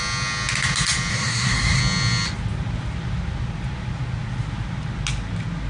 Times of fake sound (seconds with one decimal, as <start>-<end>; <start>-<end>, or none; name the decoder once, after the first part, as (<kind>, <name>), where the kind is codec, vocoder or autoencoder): 1.1-1.8 (codec, SNAC)

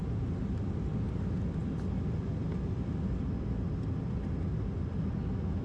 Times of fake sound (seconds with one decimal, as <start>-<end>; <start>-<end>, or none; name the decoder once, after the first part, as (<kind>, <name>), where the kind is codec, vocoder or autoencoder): none